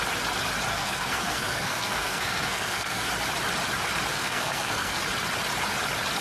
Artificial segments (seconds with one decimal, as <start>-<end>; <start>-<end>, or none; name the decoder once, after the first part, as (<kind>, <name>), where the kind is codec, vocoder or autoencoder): 0.7-3.1 (codec, SNAC); 4.1-5.0